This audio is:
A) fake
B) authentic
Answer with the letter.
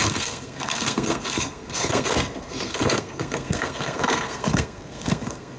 A